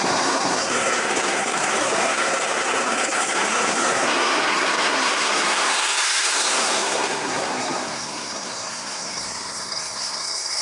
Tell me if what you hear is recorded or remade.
remade